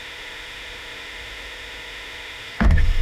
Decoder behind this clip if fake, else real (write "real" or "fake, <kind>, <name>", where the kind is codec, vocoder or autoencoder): fake, autoencoder, DAC-VAE